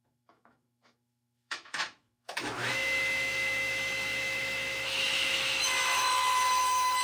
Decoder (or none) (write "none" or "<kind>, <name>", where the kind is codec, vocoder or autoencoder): autoencoder, DAC-VAE